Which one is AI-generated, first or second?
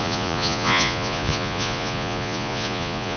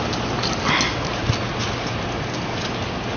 first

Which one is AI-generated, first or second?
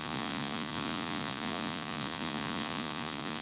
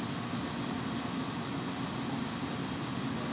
first